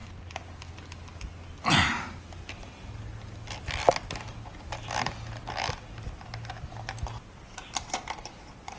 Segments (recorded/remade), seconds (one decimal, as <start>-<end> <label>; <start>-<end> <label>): 0.0-8.8 remade